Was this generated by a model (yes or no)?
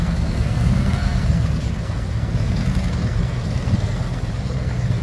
yes